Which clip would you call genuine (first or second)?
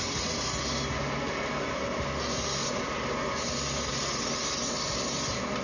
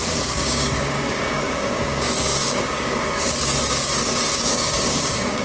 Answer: first